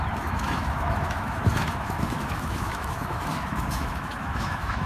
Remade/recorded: remade